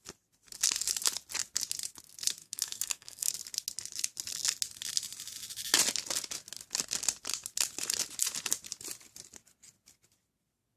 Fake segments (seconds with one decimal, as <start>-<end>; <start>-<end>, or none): 2.4-3.3